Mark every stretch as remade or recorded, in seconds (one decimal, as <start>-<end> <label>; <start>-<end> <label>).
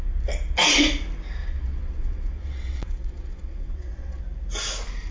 0.0-1.4 recorded; 1.4-4.2 remade; 4.2-5.1 recorded